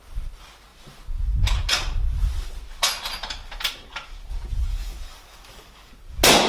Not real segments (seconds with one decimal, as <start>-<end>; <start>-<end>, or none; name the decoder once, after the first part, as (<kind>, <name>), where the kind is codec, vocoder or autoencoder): 4.7-5.9 (codec, DAC)

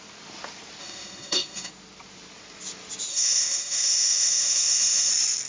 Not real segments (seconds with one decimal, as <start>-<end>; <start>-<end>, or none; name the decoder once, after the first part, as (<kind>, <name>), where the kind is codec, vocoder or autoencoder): 0.8-1.7 (autoencoder, DAC-VAE); 3.1-5.1

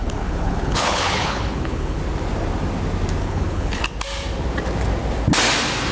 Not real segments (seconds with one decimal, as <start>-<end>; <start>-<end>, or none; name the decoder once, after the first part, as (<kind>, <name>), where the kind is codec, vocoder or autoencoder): 0.0-2.0 (codec, HILCodec); 3.2-3.8

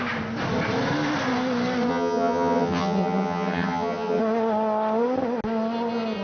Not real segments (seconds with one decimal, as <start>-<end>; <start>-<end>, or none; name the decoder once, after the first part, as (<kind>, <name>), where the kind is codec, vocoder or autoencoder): 1.9-4.2 (vocoder, HiFi-GAN)